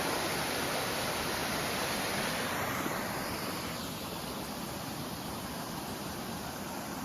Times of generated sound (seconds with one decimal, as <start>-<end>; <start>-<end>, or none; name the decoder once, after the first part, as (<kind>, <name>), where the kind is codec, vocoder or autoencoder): 1.4-2.2 (vocoder, BigVGAN v2); 3.8-6.6